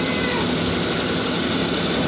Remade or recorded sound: recorded